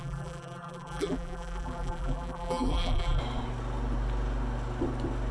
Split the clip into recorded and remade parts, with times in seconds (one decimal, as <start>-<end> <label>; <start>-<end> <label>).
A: 0.0-3.2 remade; 3.2-5.3 recorded